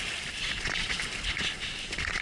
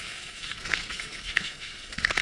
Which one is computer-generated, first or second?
second